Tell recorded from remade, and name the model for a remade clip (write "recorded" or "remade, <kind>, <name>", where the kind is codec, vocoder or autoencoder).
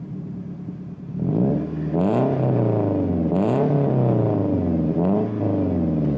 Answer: recorded